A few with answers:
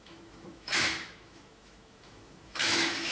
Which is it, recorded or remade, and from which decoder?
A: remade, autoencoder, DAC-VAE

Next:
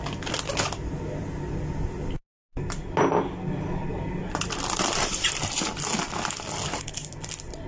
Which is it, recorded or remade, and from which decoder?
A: recorded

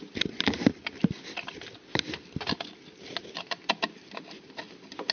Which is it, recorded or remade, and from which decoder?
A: recorded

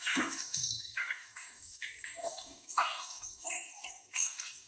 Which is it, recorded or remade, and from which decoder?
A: remade, codec, DAC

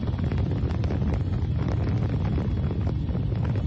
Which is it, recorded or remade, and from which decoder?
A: recorded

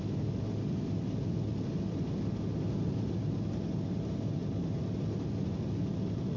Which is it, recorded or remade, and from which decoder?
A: recorded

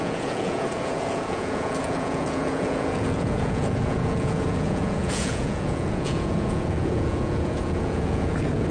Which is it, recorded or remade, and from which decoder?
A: remade, vocoder, Vocos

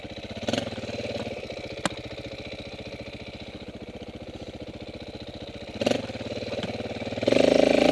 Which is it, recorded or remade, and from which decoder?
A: recorded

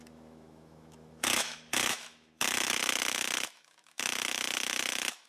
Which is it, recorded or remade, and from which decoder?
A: remade, autoencoder, DAC-VAE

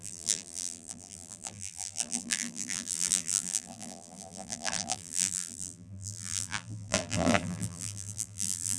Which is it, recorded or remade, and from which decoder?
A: remade, vocoder, BigVGAN v2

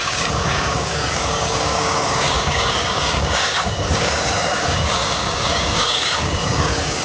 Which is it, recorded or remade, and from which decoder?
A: remade, codec, DAC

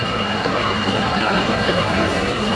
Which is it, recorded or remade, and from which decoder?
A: remade, codec, SNAC